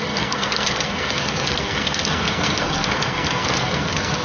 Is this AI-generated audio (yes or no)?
yes